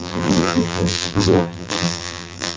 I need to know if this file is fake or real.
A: fake